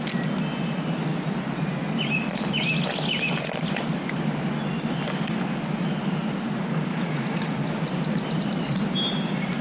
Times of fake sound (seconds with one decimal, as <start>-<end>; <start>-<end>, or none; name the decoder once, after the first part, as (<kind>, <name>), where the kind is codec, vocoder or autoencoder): 6.9-7.8 (vocoder, Vocos)